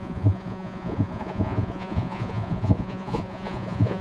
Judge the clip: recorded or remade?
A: remade